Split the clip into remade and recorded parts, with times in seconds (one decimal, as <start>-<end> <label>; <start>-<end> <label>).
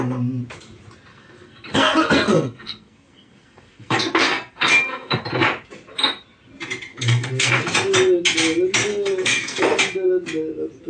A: 0.0-1.1 recorded; 1.1-5.2 remade; 5.2-6.9 recorded; 6.9-7.6 remade; 7.6-8.9 recorded; 8.9-9.6 remade; 9.6-10.9 recorded